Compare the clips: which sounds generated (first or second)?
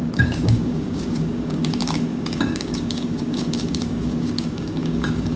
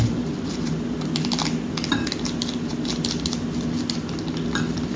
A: first